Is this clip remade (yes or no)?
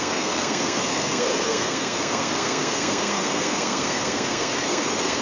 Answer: yes